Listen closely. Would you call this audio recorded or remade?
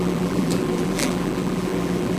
remade